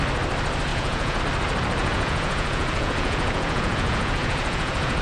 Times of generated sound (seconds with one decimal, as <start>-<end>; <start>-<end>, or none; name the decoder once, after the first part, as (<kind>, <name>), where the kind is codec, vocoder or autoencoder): 0.7-1.2 (vocoder, Vocos); 1.8-5.0